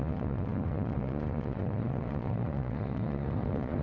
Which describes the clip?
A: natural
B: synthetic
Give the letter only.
B